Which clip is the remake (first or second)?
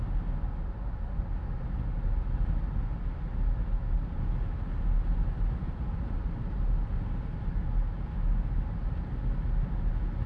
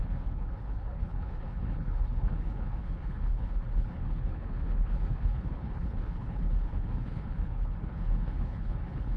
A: second